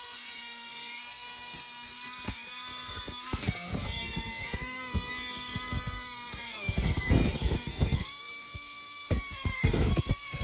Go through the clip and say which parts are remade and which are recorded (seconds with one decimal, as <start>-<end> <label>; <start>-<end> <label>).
0.0-10.4 remade